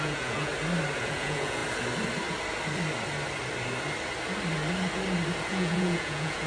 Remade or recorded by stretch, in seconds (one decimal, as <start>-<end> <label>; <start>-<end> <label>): 0.0-0.5 remade; 0.5-1.0 recorded; 1.0-1.6 remade; 1.6-5.5 recorded; 5.5-6.5 remade